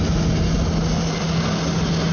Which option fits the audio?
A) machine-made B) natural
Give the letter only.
B